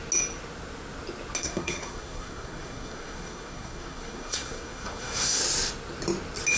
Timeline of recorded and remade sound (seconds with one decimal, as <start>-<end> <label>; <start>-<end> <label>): 0.0-1.4 recorded; 1.4-5.4 remade; 5.4-6.6 recorded